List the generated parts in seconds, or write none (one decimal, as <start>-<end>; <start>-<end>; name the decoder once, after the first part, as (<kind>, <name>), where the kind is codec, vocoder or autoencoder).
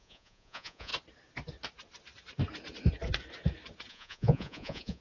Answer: 0.0-0.9 (vocoder, Vocos); 3.9-5.0